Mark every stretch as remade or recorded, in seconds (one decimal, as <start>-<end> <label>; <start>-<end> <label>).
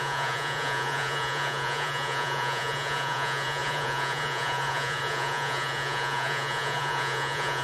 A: 0.0-7.6 remade